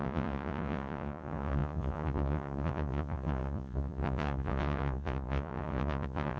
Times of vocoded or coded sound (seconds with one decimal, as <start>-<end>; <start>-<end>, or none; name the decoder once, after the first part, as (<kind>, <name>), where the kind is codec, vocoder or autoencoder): 0.0-6.4 (vocoder, Vocos)

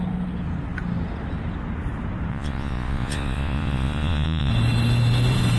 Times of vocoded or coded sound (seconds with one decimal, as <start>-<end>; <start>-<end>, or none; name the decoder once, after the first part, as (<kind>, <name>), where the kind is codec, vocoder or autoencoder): 2.3-4.5 (vocoder, Vocos)

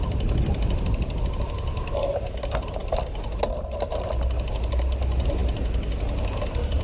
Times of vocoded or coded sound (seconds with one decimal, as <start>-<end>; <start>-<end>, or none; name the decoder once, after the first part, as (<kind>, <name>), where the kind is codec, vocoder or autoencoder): none

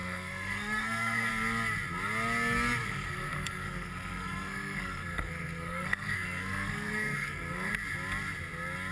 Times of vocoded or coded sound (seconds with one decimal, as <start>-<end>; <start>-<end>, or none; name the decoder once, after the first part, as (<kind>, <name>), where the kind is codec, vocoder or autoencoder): 0.0-1.3 (codec, SNAC); 2.8-7.7

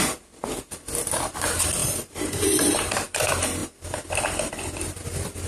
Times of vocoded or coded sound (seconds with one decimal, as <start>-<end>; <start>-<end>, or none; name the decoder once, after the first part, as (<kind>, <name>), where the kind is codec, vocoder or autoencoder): 1.8-2.9 (vocoder, BigVGAN v2)

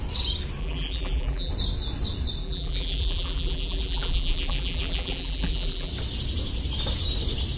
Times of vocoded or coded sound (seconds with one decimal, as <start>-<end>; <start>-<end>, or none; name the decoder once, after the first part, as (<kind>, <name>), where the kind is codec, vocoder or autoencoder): 0.6-1.5 (vocoder, BigVGAN v2); 2.4-5.9